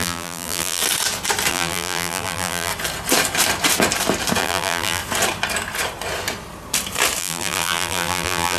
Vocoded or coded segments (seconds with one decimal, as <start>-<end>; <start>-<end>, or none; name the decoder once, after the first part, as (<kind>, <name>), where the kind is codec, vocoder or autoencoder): 0.0-0.8 (vocoder, BigVGAN v2); 1.5-2.7; 4.4-5.0; 7.2-8.6